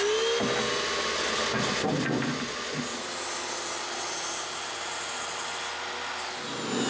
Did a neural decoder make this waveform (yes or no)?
no